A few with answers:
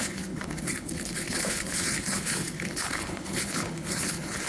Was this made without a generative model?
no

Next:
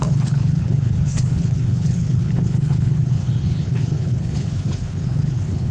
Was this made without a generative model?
no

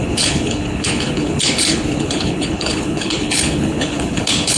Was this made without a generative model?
no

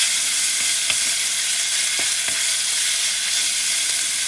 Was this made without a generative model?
yes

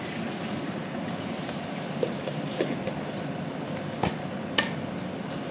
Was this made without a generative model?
yes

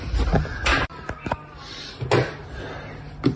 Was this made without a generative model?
yes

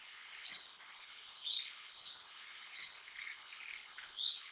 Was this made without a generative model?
no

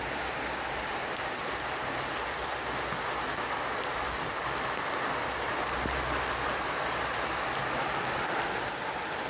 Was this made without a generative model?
yes